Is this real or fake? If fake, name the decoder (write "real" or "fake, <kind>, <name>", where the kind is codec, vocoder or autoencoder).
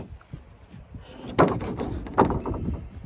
real